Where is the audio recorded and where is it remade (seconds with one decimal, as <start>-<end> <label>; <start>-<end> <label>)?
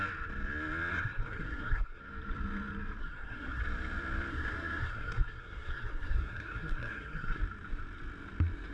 0.0-0.9 recorded; 0.9-2.0 remade; 2.0-3.0 recorded; 3.0-3.6 remade; 3.6-4.3 recorded; 4.3-7.4 remade; 7.4-8.7 recorded